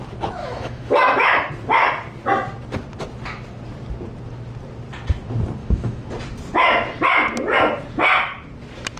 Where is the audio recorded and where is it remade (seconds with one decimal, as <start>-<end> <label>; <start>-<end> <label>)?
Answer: 0.0-0.4 recorded; 0.4-1.5 remade; 1.5-5.6 recorded; 5.6-6.1 remade; 6.1-9.0 recorded